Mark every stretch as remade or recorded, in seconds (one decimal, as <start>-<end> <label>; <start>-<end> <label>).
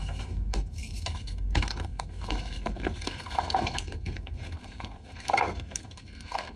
0.0-6.6 remade